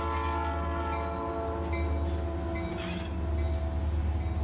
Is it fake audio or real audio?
real